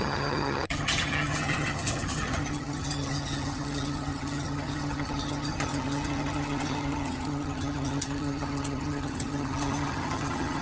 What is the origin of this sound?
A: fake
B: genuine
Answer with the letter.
A